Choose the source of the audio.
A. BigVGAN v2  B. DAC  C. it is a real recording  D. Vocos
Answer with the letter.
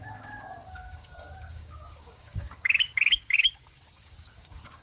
B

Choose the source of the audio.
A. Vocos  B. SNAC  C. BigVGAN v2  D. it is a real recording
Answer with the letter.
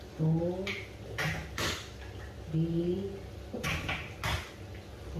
D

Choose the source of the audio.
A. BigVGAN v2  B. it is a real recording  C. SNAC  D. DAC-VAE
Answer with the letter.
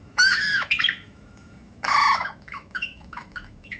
D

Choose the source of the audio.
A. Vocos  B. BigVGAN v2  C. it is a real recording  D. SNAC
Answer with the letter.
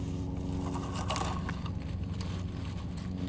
C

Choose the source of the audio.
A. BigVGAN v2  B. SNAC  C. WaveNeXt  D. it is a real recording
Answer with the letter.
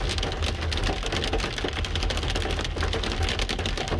D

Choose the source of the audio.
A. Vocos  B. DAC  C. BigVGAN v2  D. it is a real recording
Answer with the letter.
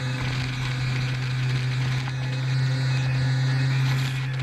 D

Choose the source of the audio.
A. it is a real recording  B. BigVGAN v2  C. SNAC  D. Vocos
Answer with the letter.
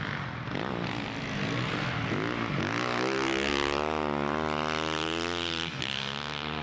A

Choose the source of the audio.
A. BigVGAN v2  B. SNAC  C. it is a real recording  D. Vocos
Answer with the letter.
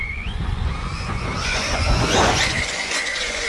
D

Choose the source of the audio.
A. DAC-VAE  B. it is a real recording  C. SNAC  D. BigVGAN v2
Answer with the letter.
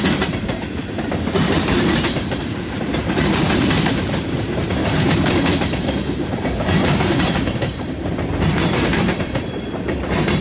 D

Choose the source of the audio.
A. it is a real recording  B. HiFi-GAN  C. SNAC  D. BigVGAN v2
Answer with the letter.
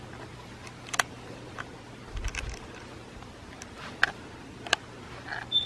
A